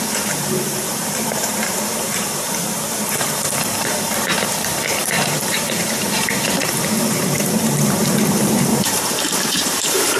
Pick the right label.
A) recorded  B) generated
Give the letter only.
B